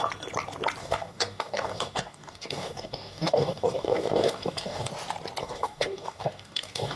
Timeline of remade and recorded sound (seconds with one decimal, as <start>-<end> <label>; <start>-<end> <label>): 0.0-0.8 recorded; 0.8-4.9 remade; 4.9-5.4 recorded; 5.4-7.0 remade